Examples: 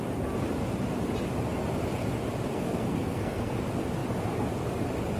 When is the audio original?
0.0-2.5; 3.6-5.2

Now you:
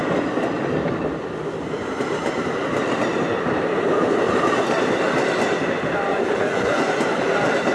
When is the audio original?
0.0-6.1; 6.9-7.7

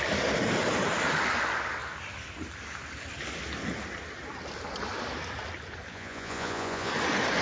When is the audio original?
0.0-5.9; 6.9-7.4

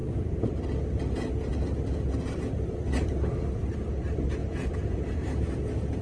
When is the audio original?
0.5-4.4

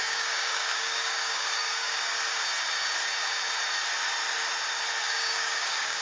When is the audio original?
2.1-5.0